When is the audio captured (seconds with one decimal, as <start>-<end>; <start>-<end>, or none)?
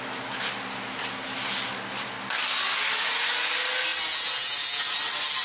0.0-5.4